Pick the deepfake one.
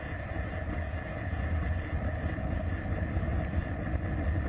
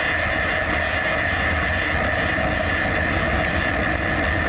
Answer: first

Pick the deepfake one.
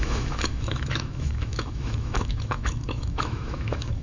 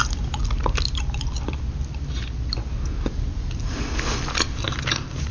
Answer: first